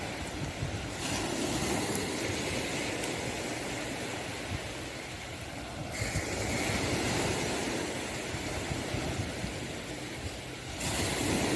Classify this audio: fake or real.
real